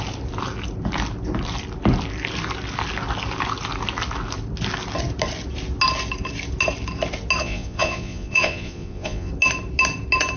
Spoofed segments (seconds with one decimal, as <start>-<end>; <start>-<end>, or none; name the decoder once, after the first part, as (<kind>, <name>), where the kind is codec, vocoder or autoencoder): 7.4-9.3 (vocoder, Vocos)